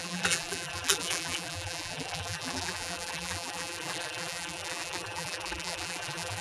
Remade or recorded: remade